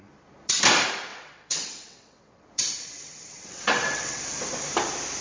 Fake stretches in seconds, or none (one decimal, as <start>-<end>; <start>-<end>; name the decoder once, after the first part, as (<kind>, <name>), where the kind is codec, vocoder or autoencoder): 1.1-4.2 (vocoder, WaveNeXt)